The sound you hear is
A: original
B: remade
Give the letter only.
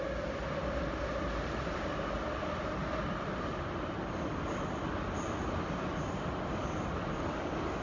A